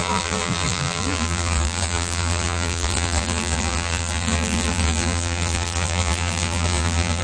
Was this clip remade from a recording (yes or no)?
yes